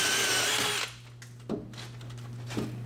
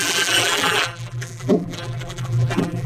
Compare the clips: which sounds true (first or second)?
first